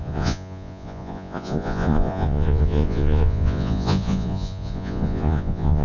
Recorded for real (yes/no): no